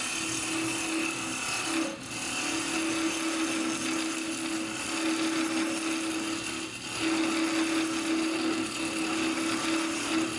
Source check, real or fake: real